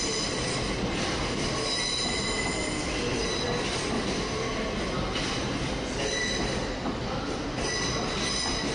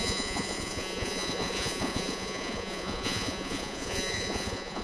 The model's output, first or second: second